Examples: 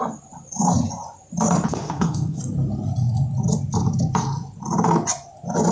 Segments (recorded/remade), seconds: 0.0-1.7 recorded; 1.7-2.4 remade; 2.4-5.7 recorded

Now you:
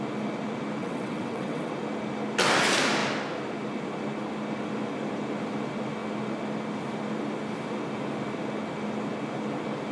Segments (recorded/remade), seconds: 0.0-0.8 recorded; 0.8-1.7 remade; 1.7-9.9 recorded

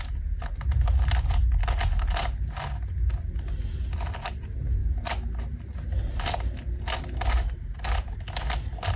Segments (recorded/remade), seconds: 0.0-9.0 recorded